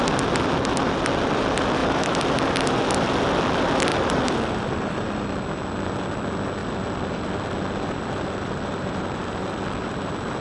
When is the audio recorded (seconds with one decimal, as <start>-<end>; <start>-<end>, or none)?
0.0-1.8; 2.8-3.9; 5.4-6.6; 10.0-10.4